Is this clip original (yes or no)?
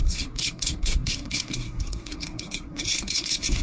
no